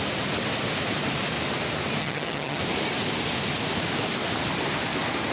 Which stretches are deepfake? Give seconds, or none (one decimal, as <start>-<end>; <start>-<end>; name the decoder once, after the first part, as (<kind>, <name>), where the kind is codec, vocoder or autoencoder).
2.0-2.6 (vocoder, HiFi-GAN)